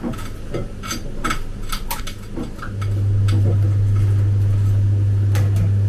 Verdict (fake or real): real